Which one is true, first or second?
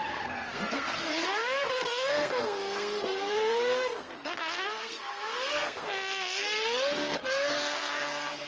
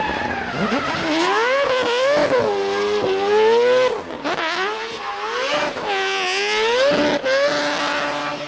second